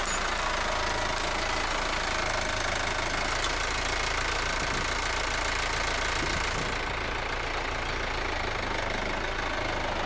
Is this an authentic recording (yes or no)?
yes